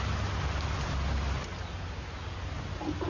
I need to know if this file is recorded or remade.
recorded